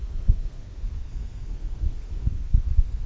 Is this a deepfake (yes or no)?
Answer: yes